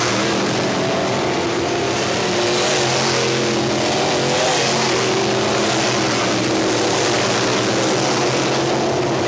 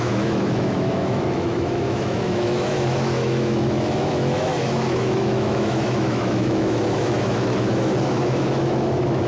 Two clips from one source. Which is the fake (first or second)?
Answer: second